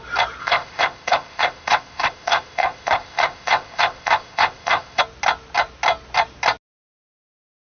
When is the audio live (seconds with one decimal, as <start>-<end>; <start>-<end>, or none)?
0.0-0.4; 5.0-7.6